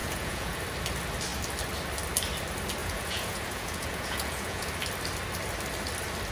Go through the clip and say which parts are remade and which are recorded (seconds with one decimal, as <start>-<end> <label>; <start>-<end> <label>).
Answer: 0.0-0.6 remade; 0.6-2.8 recorded; 2.8-4.7 remade; 4.7-6.3 recorded